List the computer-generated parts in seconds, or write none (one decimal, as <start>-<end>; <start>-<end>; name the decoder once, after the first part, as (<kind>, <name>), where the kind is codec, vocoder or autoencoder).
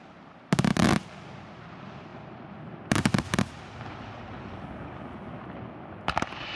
none